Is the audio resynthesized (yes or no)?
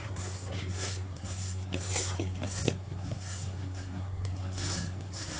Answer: yes